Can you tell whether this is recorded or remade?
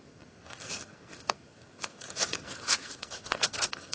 remade